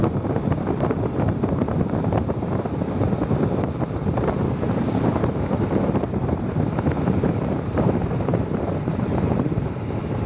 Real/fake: fake